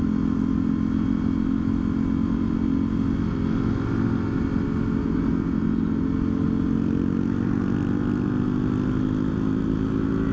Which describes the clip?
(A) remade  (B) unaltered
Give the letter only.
B